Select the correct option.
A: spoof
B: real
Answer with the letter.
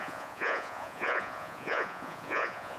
A